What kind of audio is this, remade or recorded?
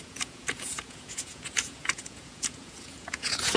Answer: remade